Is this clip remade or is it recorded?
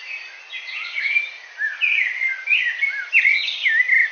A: recorded